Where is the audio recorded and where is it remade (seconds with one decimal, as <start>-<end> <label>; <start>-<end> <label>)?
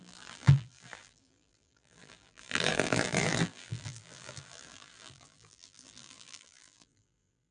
0.0-7.5 remade